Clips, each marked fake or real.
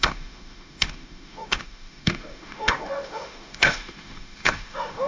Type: fake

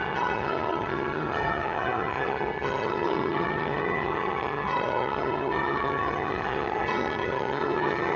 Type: fake